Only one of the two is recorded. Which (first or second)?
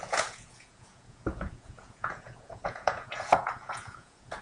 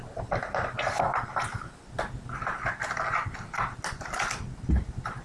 second